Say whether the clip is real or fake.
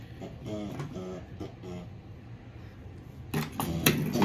real